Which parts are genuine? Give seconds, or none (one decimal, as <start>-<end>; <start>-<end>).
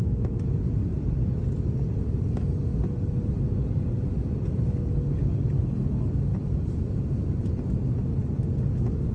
0.0-6.3; 8.1-9.1